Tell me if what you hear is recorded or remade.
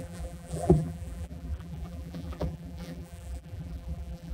remade